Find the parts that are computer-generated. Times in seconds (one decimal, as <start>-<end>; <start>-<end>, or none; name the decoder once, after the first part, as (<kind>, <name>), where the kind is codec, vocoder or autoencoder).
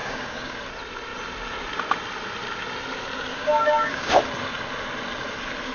0.0-0.6 (codec, DAC); 3.3-4.2